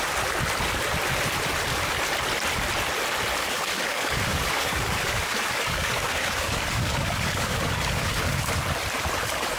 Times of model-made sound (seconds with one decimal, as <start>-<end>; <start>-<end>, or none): 3.4-8.5